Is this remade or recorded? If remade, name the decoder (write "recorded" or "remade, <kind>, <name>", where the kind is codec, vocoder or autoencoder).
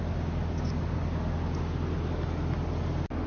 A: recorded